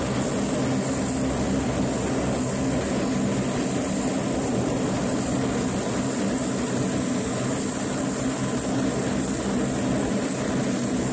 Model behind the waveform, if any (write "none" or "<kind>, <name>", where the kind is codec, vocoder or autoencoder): none